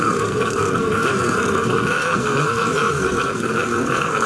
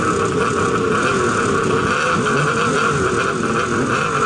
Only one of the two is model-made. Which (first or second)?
first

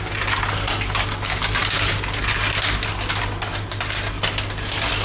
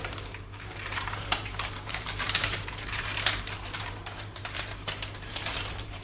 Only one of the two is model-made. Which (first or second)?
second